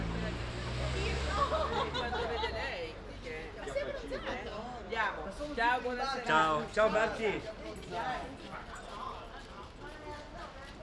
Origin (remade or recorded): recorded